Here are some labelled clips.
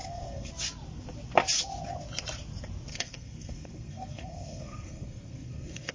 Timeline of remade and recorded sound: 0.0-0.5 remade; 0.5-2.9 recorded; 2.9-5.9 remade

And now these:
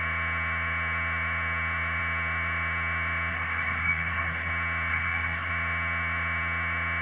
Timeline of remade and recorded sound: 0.0-3.3 recorded; 3.3-4.5 remade; 4.5-4.9 recorded; 4.9-5.5 remade; 5.5-7.0 recorded